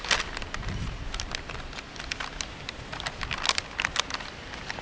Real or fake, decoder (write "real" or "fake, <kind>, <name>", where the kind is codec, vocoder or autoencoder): real